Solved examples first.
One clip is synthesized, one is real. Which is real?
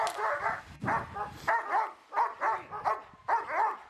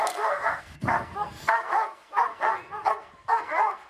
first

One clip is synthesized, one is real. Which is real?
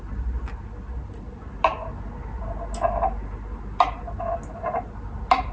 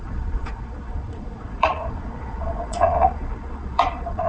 first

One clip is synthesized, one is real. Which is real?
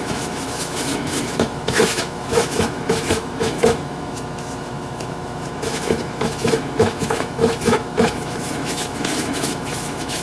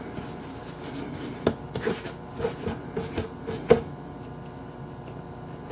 second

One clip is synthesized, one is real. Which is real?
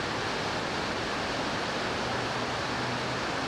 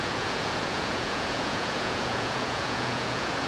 first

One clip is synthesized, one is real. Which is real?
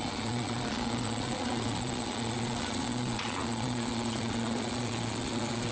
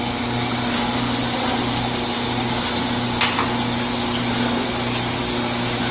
second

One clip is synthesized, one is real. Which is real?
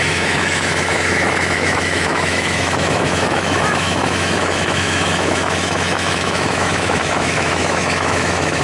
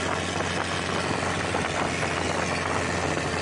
second